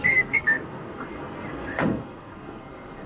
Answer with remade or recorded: remade